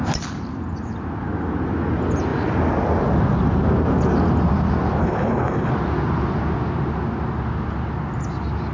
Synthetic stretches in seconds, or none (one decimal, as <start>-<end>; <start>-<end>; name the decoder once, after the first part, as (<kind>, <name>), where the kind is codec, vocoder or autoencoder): 5.0-5.7 (codec, HILCodec)